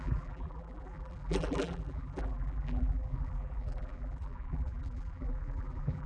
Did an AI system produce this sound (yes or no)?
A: yes